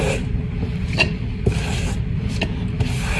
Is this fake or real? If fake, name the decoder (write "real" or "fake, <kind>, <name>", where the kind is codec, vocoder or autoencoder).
real